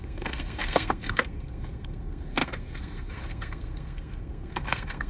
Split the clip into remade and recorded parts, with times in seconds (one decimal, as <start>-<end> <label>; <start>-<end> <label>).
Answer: 0.0-5.1 remade